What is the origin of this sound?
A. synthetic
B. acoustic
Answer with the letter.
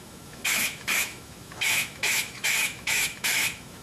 A